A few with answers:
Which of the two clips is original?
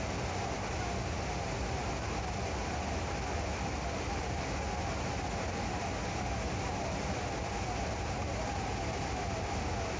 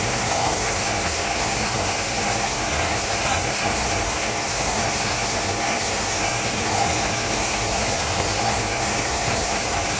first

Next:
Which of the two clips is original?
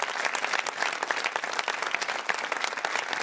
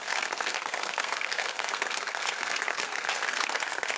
first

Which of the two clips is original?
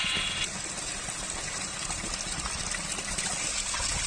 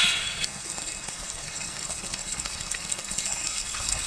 first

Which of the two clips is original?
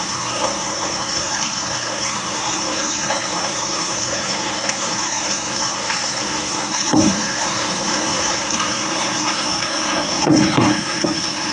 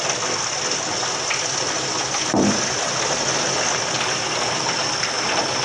second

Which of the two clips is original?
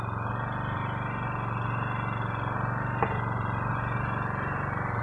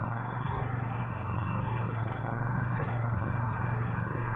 first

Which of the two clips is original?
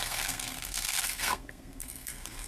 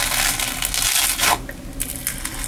second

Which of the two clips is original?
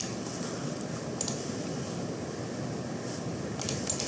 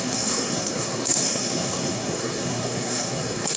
first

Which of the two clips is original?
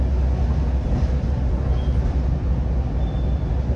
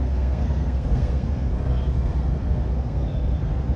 first